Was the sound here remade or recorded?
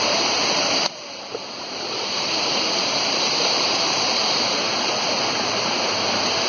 remade